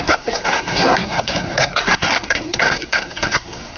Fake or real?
fake